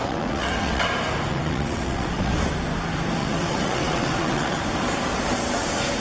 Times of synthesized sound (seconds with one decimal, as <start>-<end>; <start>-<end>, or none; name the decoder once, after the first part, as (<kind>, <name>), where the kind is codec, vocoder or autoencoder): 0.0-0.9 (vocoder, WaveNeXt); 1.3-2.3; 3.2-4.6